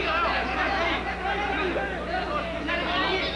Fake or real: real